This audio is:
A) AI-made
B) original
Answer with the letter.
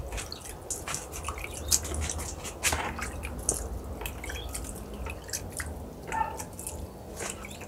B